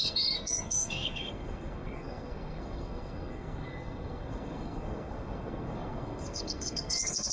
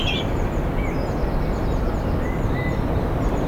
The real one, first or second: second